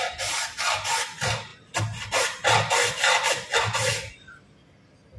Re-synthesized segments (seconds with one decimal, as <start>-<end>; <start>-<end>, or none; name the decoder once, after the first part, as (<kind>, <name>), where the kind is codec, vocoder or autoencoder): none